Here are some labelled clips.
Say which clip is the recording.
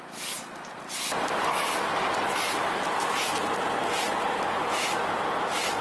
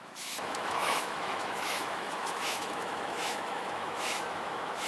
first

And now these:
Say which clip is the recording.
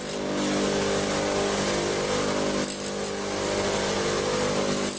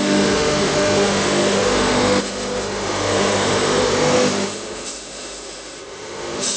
first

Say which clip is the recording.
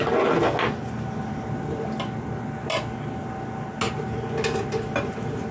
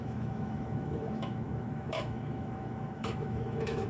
first